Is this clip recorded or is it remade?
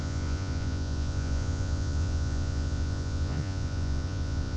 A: remade